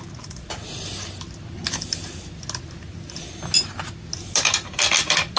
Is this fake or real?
real